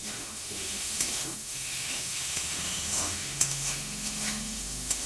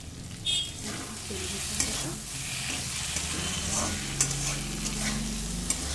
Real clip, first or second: second